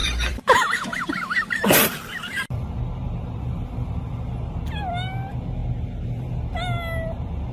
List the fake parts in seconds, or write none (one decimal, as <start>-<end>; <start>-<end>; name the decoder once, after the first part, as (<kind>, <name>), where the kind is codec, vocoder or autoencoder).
0.0-4.0 (vocoder, BigVGAN v2)